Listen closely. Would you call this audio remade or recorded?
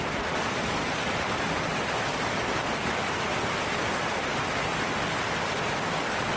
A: recorded